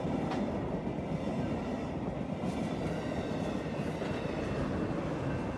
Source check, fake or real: real